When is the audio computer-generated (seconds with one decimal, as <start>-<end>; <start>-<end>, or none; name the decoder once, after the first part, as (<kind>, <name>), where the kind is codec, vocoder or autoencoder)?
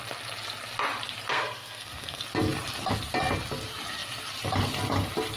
1.3-2.2 (codec, SNAC)